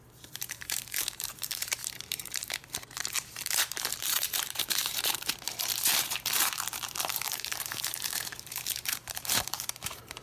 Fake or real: fake